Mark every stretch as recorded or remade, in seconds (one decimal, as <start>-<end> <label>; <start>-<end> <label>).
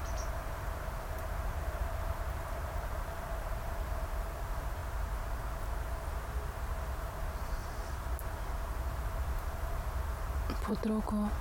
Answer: 0.0-4.8 remade; 4.8-7.0 recorded; 7.0-7.6 remade; 7.6-8.7 recorded; 8.7-10.7 remade; 10.7-11.4 recorded